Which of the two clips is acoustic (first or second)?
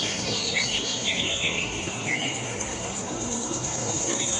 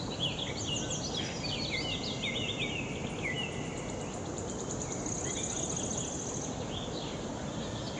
second